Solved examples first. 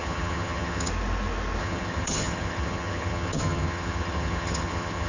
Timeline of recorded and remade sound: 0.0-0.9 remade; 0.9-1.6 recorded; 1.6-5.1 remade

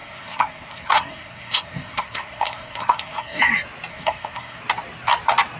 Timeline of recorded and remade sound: 0.0-3.4 remade; 3.4-3.9 recorded; 3.9-4.6 remade; 4.6-5.6 recorded

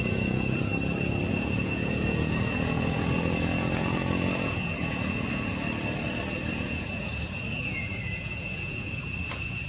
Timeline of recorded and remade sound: 0.0-0.7 remade; 0.7-1.3 recorded; 1.3-5.5 remade; 5.5-6.5 recorded; 6.5-9.7 remade

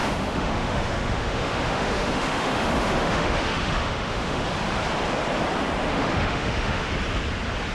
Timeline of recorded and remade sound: 0.0-4.5 remade; 4.5-5.9 recorded; 5.9-6.9 remade; 6.9-7.7 recorded

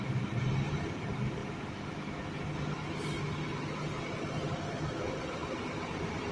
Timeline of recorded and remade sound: 0.0-6.3 recorded

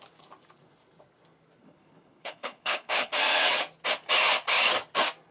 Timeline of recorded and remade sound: 0.0-1.6 recorded; 1.6-3.1 remade; 3.1-5.3 recorded

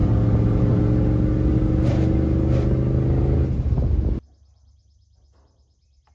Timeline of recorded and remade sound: 0.0-6.1 recorded